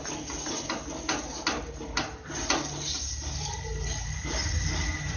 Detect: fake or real real